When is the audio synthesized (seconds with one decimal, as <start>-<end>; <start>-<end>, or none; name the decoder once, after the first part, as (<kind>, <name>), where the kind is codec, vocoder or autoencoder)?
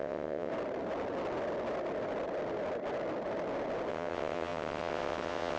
0.0-0.5 (vocoder, WaveNeXt); 3.9-5.6